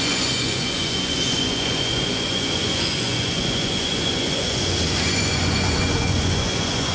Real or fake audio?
fake